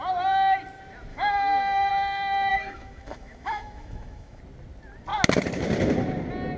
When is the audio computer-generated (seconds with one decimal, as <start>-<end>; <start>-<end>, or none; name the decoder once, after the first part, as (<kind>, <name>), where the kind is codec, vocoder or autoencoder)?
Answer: 1.1-1.9 (autoencoder, DAC-VAE); 2.5-4.4